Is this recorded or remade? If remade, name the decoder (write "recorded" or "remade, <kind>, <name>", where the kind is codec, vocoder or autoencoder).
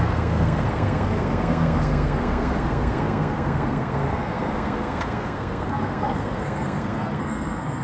remade, codec, SNAC